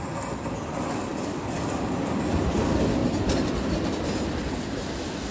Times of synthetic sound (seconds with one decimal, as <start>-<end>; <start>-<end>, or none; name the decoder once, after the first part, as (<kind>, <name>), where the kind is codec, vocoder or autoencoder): 1.1-1.6 (vocoder, BigVGAN v2); 3.0-4.7